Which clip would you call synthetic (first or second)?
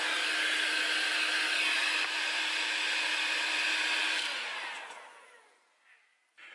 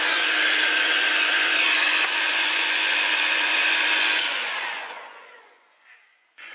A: second